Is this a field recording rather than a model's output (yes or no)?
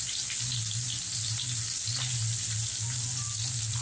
yes